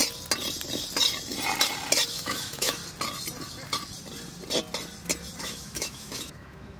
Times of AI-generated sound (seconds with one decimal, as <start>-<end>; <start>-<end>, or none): 2.1-2.8; 5.4-6.8